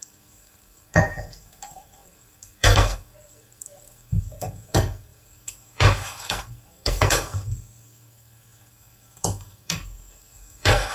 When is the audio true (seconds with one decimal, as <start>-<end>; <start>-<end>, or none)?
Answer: none

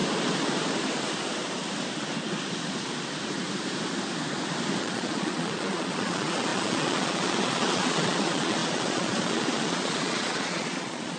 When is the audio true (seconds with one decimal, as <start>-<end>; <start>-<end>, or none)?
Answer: 0.0-4.8

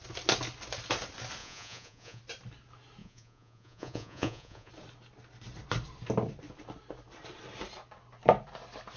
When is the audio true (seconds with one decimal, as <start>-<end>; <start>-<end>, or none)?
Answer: 0.0-1.4; 2.2-3.0; 4.7-9.0